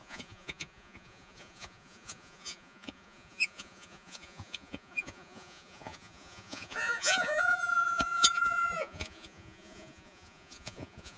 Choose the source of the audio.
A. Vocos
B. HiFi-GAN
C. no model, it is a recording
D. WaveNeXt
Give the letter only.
A